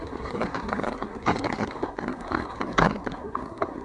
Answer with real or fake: fake